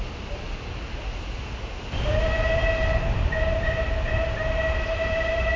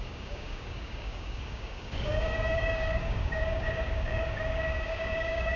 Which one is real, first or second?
first